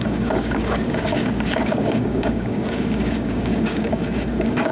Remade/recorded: remade